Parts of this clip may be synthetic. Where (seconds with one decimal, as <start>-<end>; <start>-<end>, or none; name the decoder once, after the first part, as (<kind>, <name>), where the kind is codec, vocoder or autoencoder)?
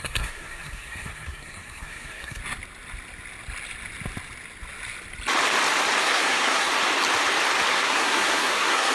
0.0-2.4 (codec, SNAC); 6.0-6.7; 7.7-8.9